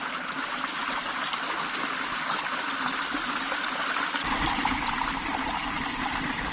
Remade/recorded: recorded